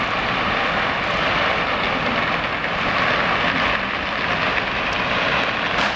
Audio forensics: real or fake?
real